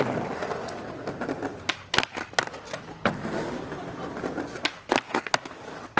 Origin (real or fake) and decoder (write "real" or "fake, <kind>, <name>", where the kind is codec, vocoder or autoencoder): real